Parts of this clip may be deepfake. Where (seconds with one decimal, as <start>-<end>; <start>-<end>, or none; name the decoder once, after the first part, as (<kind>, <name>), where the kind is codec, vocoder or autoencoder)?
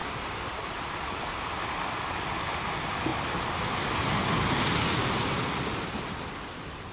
none